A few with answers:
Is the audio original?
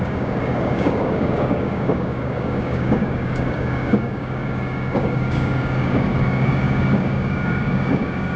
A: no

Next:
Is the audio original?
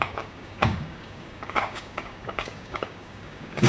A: no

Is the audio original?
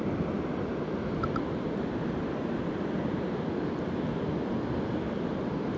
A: yes